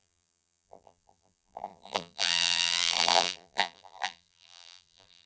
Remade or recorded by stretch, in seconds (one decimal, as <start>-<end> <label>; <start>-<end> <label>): 0.0-5.3 remade